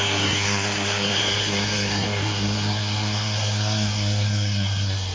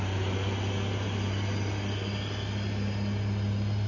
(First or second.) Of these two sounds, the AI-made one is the first